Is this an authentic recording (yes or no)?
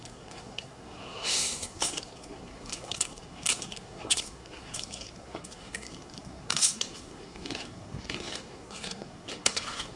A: no